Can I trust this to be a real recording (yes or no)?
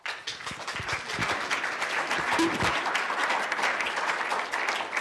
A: yes